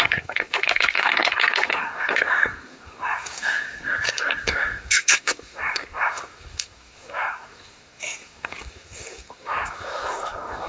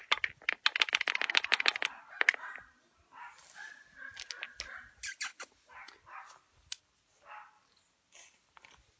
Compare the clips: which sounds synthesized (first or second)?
first